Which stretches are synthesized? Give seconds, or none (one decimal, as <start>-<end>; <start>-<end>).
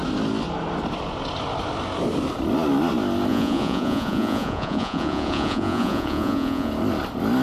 3.3-6.7